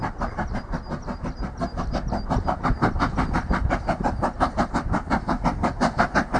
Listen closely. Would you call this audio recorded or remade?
recorded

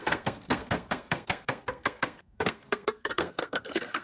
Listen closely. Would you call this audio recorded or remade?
remade